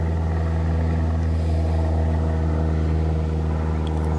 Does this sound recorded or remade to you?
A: recorded